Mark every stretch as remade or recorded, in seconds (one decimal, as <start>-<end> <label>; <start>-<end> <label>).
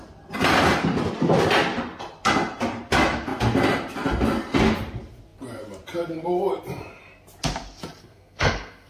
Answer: 0.0-8.0 recorded; 8.0-8.9 remade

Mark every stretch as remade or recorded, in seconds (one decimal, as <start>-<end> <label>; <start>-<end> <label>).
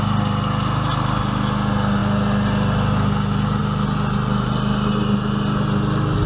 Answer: 0.0-6.3 recorded